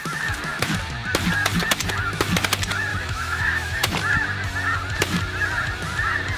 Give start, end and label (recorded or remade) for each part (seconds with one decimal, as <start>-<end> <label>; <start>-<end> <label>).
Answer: 0.0-2.9 recorded; 2.9-3.9 remade; 3.9-6.4 recorded

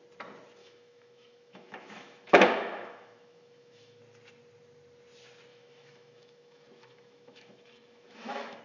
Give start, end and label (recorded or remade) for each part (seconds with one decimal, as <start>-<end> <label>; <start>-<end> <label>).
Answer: 0.0-0.6 recorded; 0.6-4.0 remade; 4.0-5.5 recorded; 5.5-8.6 remade

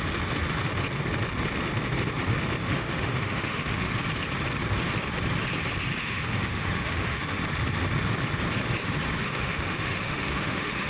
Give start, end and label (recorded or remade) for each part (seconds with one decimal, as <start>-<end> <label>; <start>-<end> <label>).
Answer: 0.0-2.6 recorded; 2.6-3.9 remade; 3.9-6.0 recorded; 6.0-7.4 remade; 7.4-9.2 recorded; 9.2-10.9 remade

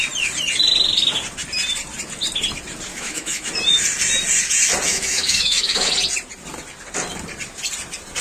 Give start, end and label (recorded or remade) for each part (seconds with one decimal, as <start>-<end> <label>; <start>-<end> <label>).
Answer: 0.0-2.9 recorded; 2.9-3.5 remade; 3.5-4.9 recorded; 4.9-5.9 remade; 5.9-8.2 recorded

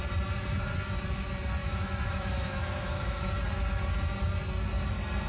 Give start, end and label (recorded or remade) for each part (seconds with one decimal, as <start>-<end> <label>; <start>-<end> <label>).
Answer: 0.0-1.6 recorded; 1.6-3.3 remade; 3.3-5.3 recorded